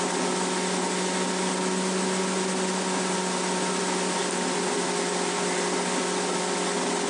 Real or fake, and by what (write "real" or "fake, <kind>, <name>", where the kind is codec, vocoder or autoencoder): real